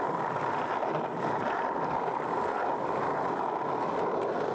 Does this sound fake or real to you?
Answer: real